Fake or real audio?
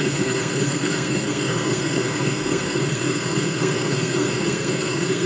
fake